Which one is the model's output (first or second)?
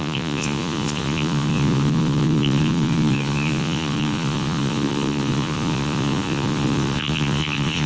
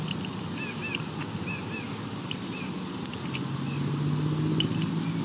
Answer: first